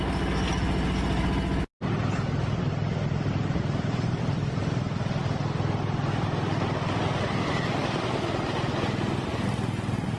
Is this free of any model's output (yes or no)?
yes